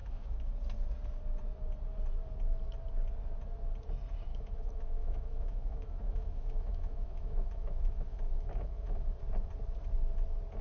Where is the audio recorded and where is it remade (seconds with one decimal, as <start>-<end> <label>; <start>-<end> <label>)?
0.0-0.5 remade; 0.5-4.3 recorded; 4.3-9.2 remade; 9.2-10.6 recorded